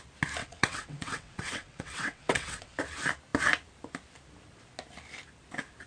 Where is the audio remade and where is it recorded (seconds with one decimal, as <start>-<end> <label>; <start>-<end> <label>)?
0.0-0.4 recorded; 0.4-2.8 remade; 2.8-5.9 recorded